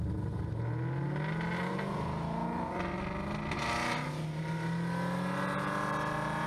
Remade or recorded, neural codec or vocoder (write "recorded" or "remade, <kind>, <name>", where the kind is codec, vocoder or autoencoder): recorded